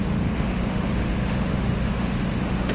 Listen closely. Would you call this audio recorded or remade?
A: remade